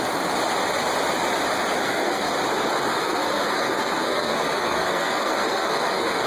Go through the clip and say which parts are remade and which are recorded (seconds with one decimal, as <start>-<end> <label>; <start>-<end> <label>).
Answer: 0.0-1.8 recorded; 1.8-2.3 remade; 2.3-2.9 recorded; 2.9-6.3 remade